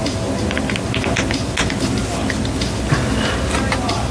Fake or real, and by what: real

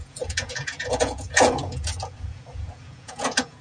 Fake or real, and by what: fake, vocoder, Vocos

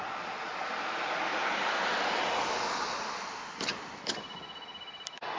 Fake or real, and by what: real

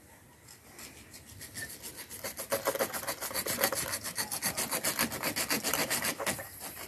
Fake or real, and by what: real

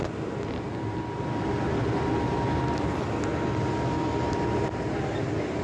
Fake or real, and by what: real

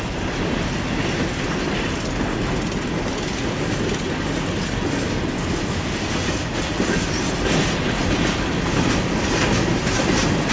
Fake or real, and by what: real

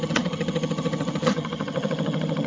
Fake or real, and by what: fake, vocoder, HiFi-GAN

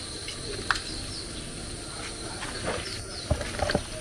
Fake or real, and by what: real